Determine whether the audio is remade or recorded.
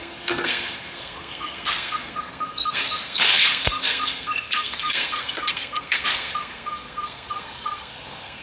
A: remade